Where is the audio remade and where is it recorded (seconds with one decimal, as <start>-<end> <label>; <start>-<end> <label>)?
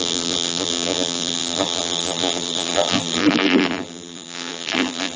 0.0-5.2 remade